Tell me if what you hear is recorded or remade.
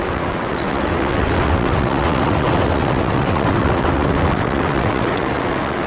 remade